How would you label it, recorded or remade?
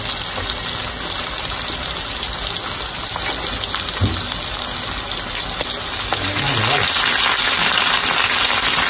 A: recorded